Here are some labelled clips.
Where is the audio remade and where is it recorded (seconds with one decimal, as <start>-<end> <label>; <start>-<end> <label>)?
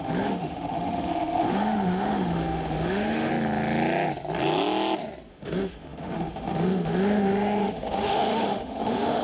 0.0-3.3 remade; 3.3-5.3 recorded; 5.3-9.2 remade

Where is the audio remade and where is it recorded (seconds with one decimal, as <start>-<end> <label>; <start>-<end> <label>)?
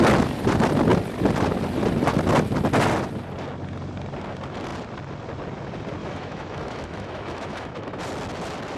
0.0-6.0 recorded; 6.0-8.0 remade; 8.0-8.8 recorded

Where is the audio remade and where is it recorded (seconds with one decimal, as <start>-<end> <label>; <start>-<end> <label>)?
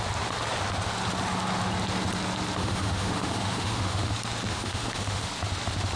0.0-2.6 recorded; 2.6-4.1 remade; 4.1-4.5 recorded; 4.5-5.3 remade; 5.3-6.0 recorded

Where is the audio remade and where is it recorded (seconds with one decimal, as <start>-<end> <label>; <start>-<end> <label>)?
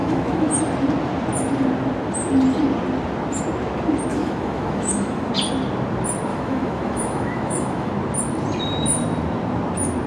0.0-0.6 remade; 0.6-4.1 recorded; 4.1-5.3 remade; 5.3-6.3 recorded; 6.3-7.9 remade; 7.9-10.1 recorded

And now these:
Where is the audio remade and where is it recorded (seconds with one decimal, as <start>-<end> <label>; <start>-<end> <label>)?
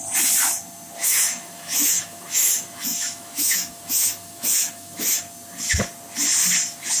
0.0-1.0 recorded; 1.0-5.2 remade; 5.2-7.0 recorded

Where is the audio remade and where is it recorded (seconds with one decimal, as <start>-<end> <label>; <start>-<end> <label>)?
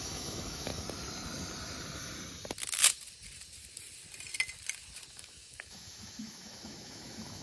0.0-0.7 remade; 0.7-5.1 recorded; 5.1-7.4 remade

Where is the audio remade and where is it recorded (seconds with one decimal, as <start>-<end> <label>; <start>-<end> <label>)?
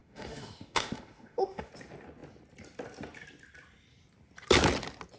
0.0-1.7 remade; 1.7-5.2 recorded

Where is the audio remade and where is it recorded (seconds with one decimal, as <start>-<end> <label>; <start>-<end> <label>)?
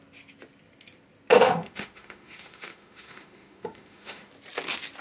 0.0-1.3 recorded; 1.3-4.3 remade; 4.3-5.0 recorded